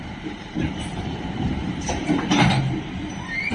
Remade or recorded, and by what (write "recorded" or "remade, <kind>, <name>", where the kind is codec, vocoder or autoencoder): remade, vocoder, BigVGAN v2